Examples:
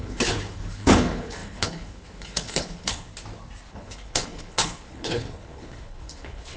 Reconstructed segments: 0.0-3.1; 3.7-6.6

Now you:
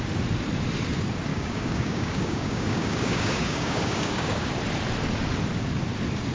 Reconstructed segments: 1.3-4.5

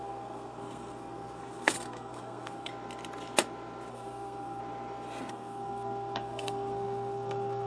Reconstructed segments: 0.0-2.7; 3.9-4.6; 5.3-7.7

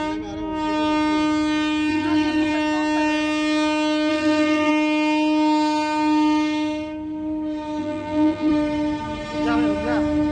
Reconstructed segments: 1.9-2.5; 4.1-4.7; 7.8-8.5

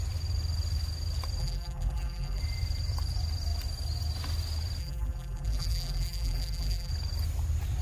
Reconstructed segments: 1.4-2.4; 4.8-6.9

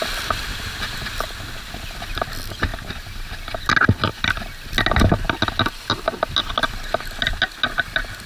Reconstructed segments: none

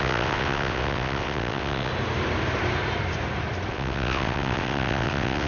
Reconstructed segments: 0.0-1.9; 3.7-5.5